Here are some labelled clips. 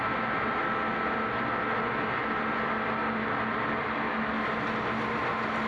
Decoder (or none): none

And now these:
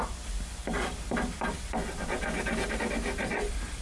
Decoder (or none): vocoder, BigVGAN v2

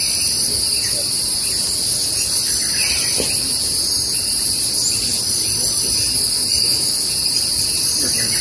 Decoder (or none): none